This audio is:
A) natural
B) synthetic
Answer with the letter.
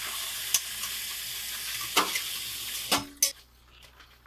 A